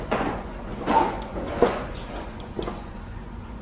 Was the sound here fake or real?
fake